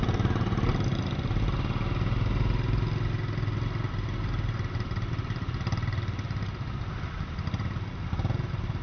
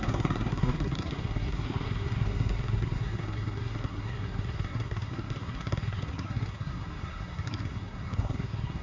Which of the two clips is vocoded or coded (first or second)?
second